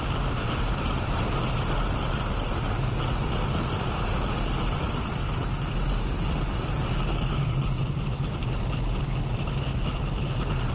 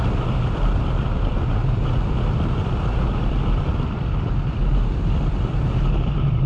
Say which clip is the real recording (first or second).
first